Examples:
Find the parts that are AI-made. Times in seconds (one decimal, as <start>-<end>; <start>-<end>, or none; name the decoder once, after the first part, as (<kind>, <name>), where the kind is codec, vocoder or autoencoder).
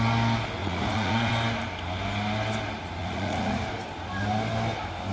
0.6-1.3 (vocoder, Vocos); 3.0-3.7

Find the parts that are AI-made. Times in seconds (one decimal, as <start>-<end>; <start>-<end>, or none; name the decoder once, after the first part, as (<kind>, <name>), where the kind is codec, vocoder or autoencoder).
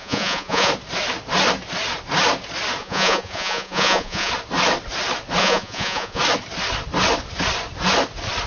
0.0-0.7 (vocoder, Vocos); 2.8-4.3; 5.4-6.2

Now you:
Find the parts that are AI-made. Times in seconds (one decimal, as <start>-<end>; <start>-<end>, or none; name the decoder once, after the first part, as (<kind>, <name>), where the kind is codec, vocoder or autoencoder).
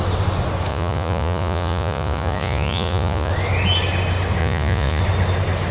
0.7-3.3 (vocoder, Vocos); 4.4-5.0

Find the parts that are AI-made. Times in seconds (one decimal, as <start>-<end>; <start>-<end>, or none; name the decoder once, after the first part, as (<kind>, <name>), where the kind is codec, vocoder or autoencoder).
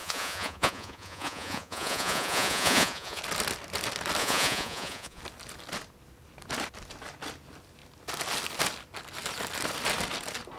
0.0-3.2 (vocoder, Vocos); 4.2-5.2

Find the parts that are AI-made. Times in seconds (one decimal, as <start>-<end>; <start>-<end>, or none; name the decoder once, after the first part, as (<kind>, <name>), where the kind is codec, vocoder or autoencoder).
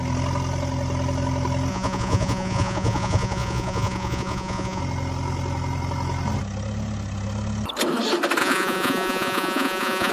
1.7-4.8 (vocoder, Vocos); 8.4-10.1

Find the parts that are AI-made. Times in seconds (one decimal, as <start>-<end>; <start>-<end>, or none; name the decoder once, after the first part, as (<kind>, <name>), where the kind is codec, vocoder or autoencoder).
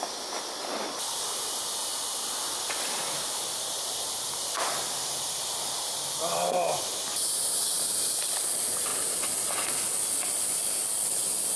none